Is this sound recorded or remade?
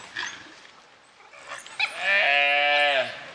recorded